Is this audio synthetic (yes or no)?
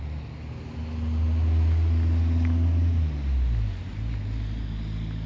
no